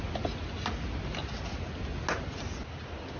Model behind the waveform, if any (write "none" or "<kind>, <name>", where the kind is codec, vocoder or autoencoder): none